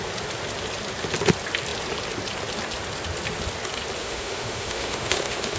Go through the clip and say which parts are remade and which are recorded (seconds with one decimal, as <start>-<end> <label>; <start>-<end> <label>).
0.0-4.0 recorded; 4.0-5.6 remade